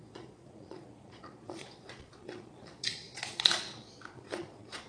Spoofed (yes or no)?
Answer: yes